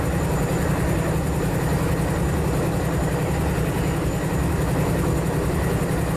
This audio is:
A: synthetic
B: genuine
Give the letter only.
B